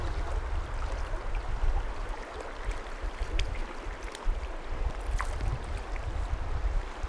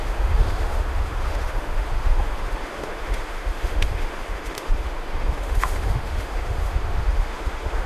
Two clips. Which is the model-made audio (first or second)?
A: second